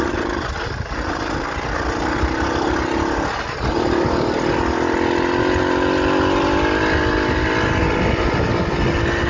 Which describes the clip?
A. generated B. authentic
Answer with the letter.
B